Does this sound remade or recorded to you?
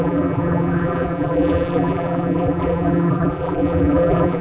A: remade